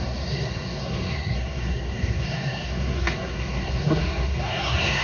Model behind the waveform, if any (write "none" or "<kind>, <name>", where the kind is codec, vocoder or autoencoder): codec, SNAC